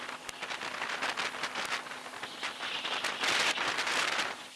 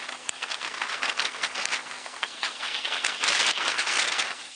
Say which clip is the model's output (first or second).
second